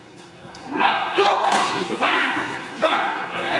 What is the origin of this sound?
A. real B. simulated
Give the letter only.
B